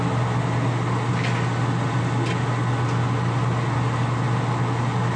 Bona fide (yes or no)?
yes